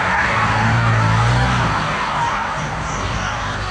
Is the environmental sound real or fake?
fake